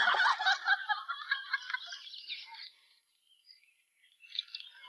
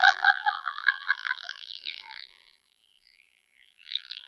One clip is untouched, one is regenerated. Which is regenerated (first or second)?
second